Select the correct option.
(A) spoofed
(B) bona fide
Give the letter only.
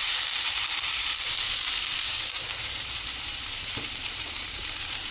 A